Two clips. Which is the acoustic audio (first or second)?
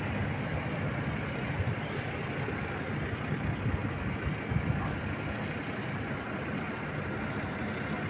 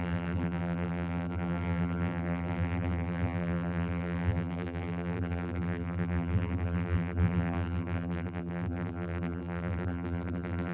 first